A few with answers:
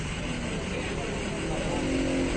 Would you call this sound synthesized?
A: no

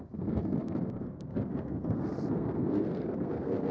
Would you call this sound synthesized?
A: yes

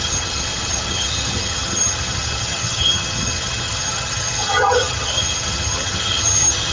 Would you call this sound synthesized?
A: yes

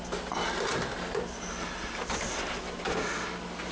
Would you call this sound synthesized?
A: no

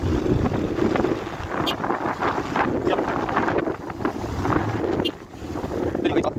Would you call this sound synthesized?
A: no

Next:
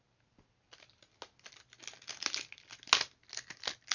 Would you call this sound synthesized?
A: no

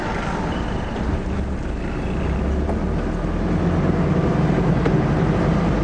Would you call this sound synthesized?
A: no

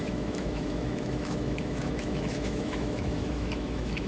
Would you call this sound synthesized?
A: yes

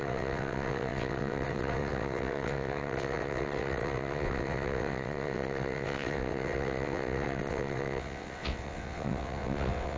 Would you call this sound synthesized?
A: yes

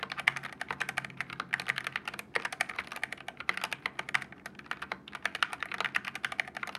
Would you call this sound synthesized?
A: no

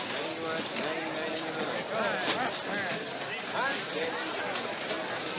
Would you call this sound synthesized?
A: no